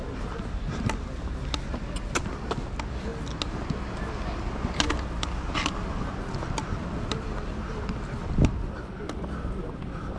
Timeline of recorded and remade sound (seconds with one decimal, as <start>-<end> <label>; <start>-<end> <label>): 0.0-10.2 recorded